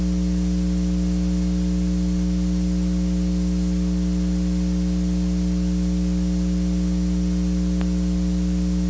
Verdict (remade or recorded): recorded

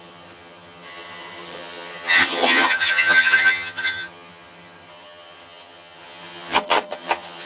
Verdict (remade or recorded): remade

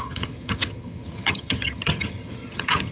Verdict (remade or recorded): remade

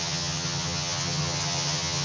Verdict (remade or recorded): remade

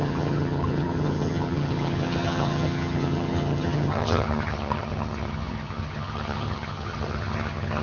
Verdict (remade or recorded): remade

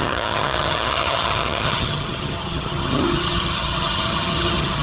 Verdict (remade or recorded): remade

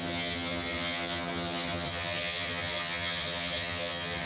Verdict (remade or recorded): remade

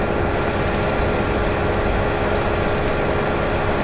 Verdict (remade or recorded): recorded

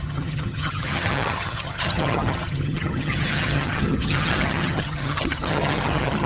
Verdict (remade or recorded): remade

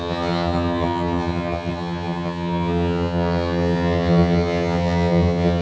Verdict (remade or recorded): remade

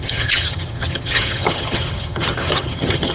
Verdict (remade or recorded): remade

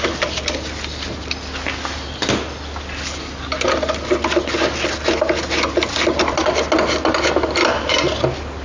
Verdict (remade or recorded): recorded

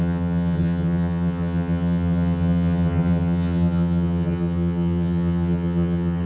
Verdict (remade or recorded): remade